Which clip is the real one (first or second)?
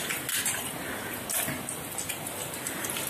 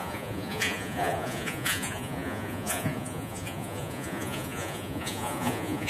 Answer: first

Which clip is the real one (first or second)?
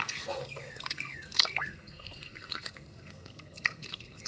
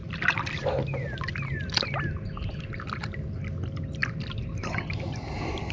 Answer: second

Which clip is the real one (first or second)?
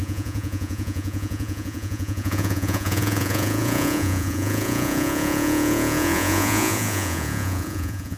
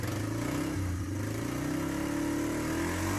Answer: second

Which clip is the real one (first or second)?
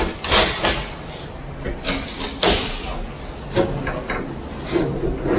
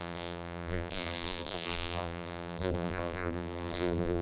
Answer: first